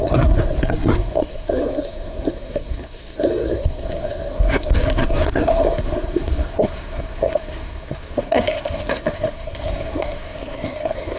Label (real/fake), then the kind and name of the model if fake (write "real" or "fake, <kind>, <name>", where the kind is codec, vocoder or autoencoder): fake, codec, SNAC